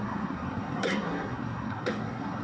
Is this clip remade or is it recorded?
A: remade